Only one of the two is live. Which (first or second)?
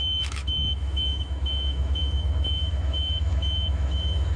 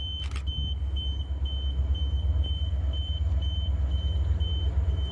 second